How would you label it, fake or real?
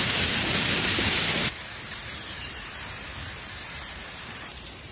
fake